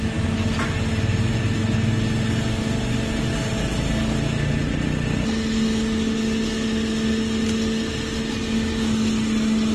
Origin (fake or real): real